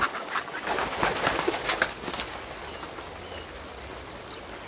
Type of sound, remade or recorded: recorded